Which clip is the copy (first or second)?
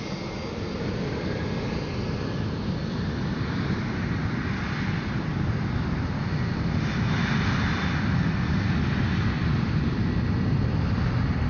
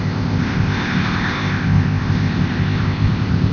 second